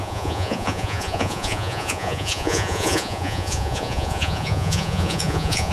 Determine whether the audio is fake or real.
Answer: fake